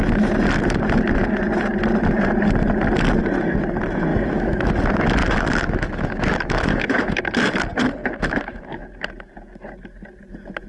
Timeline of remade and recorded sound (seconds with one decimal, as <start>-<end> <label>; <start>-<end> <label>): 0.0-4.1 recorded; 4.1-4.7 remade; 4.7-5.2 recorded; 5.2-7.2 remade; 7.2-8.0 recorded; 8.0-9.1 remade; 9.1-10.7 recorded